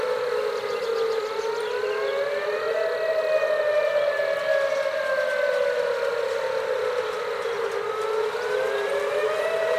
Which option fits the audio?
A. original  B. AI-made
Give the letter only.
A